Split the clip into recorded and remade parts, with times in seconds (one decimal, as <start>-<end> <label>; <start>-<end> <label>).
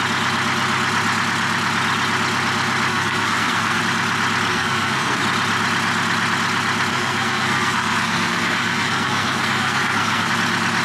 0.0-2.9 recorded; 2.9-3.8 remade; 3.8-4.5 recorded; 4.5-5.2 remade; 5.2-6.9 recorded; 6.9-10.3 remade; 10.3-10.8 recorded